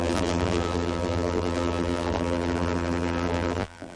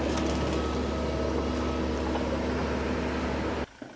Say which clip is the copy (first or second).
first